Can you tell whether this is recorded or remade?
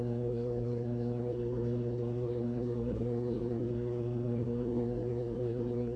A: remade